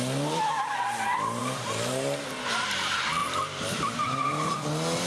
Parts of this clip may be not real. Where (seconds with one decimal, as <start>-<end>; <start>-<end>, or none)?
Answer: 1.4-2.2; 3.2-4.5